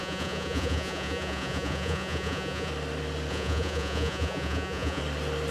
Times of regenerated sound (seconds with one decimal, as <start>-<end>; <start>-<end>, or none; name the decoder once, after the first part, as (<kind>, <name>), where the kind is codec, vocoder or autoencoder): 0.0-2.7 (vocoder, Vocos); 3.3-5.0